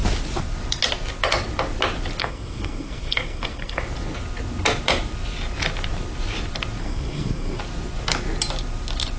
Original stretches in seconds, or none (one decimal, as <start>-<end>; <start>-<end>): 0.0-2.2; 3.8-6.8; 7.6-9.2

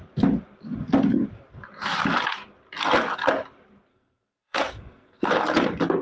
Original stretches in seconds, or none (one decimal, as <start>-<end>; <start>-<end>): 0.0-3.9; 5.3-6.0

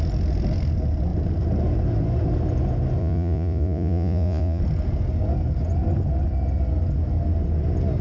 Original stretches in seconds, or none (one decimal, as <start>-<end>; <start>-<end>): 0.0-3.0; 4.6-8.0

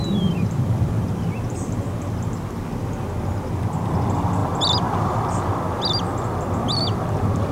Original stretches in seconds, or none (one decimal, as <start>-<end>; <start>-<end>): 1.1-7.5